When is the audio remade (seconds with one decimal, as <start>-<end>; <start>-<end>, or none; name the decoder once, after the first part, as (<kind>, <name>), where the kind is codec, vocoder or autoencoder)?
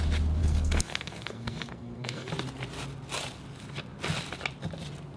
0.4-2.3 (codec, SNAC)